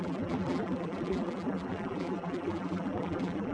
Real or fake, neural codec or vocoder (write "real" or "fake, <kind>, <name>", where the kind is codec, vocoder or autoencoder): fake, vocoder, BigVGAN v2